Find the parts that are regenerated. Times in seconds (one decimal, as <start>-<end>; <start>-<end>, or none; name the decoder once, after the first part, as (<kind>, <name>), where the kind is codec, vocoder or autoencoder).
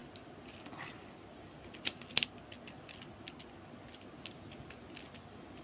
none